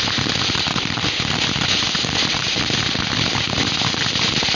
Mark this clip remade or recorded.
remade